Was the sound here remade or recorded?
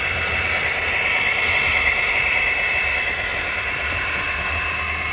remade